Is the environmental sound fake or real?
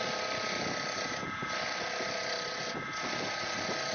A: real